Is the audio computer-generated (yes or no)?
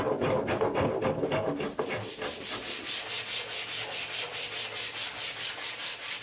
no